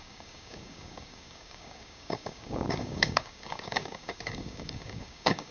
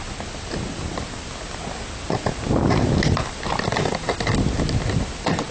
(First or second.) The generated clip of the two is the first